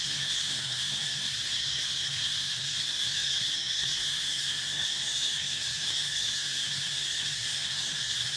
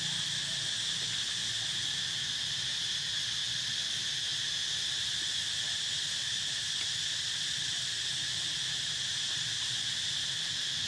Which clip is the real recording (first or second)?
second